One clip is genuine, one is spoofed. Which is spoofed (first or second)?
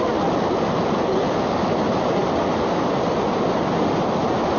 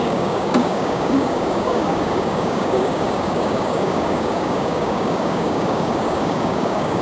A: second